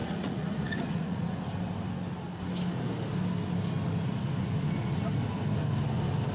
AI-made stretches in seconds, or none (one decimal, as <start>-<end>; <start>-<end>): 0.0-1.3